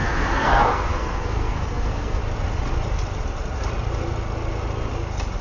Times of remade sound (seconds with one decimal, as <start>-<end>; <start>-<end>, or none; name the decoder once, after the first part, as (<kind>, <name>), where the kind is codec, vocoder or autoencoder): 0.0-2.2 (codec, SNAC)